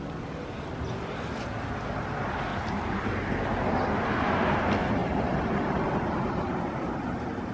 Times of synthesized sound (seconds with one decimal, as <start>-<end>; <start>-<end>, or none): 2.5-3.2; 5.0-6.9